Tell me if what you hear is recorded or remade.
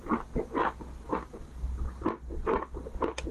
recorded